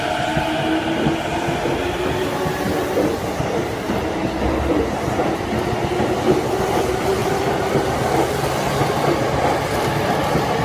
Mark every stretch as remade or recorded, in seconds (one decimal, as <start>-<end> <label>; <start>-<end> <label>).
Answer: 0.0-7.2 recorded; 7.2-8.0 remade; 8.0-10.6 recorded